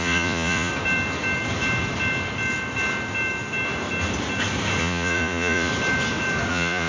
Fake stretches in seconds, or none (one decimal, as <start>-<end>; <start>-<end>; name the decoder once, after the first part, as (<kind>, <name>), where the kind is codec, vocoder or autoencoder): 0.0-0.7 (vocoder, Vocos); 4.8-5.7; 6.5-6.9